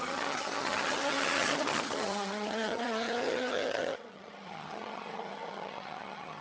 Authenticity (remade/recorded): remade